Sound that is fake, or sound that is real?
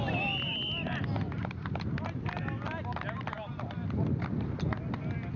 real